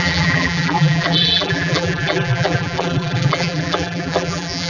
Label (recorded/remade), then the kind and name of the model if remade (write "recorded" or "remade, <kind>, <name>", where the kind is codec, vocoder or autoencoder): remade, vocoder, BigVGAN v2